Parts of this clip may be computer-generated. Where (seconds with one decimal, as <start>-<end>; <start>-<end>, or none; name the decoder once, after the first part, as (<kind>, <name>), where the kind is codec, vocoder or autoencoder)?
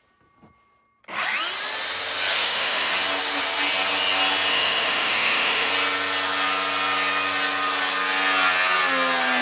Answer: 2.3-2.9 (autoencoder, DAC-VAE); 4.5-5.7